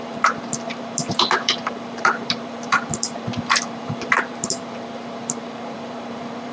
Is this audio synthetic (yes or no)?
yes